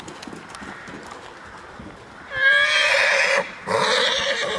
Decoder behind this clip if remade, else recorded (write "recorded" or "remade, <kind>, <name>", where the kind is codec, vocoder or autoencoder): recorded